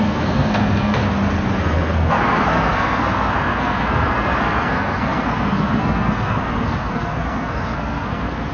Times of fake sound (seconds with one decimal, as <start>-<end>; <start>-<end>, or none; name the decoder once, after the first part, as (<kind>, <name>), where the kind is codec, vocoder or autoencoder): 0.0-1.0 (codec, SNAC); 1.6-8.5